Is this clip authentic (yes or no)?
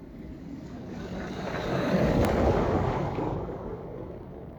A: no